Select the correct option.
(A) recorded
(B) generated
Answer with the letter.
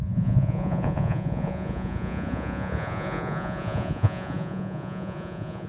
B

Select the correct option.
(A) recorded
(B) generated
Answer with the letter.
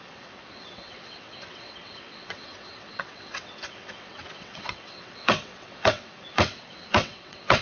B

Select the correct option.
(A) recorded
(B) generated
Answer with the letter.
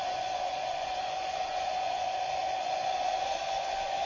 B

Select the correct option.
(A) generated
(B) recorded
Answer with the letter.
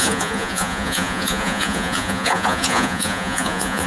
A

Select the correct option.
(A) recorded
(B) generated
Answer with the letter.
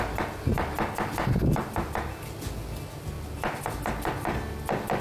A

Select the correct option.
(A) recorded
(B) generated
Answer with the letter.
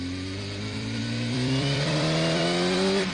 B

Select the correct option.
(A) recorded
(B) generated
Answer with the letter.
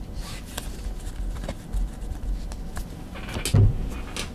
A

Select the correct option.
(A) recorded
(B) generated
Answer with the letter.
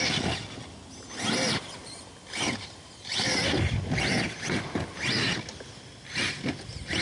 A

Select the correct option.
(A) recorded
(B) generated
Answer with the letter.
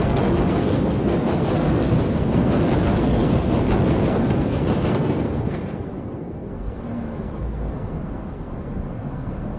B